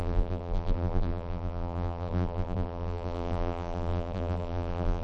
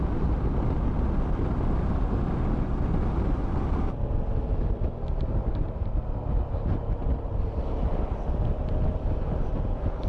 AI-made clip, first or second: first